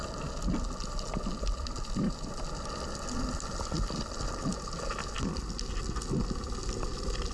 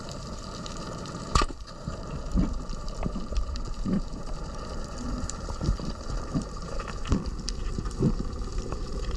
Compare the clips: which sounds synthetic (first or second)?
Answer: second